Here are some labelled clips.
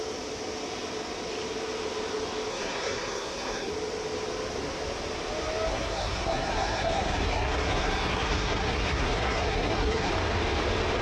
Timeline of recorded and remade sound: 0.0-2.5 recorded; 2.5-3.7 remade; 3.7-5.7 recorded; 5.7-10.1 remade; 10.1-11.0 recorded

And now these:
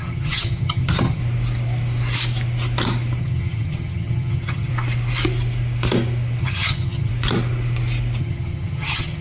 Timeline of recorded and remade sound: 0.0-1.2 remade; 1.2-3.2 recorded; 3.2-4.7 remade; 4.7-6.4 recorded; 6.4-7.1 remade; 7.1-8.2 recorded; 8.2-9.2 remade

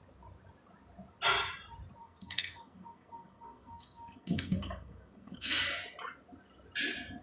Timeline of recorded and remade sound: 0.0-2.0 recorded; 2.0-5.6 remade; 5.6-7.2 recorded

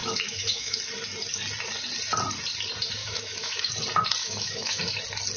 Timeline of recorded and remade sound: 0.0-0.8 remade; 0.8-3.0 recorded; 3.0-3.7 remade; 3.7-4.2 recorded; 4.2-4.8 remade; 4.8-5.4 recorded

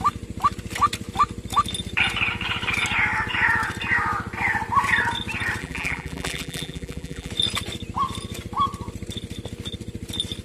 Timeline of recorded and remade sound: 0.0-5.6 recorded; 5.6-7.3 remade; 7.3-10.4 recorded

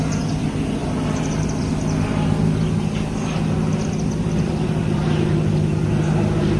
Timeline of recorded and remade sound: 0.0-6.6 recorded

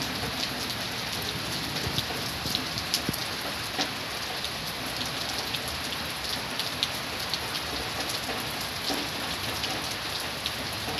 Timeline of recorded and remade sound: 0.0-11.0 recorded

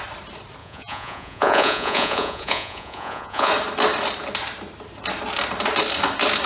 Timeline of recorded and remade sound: 0.0-0.6 recorded; 0.6-3.5 remade; 3.5-6.5 recorded